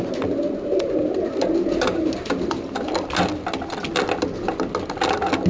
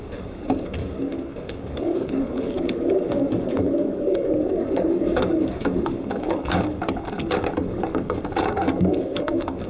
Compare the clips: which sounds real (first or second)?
first